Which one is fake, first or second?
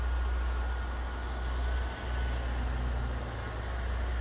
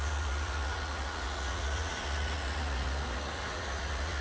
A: second